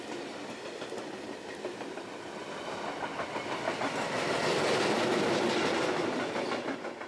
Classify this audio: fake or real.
real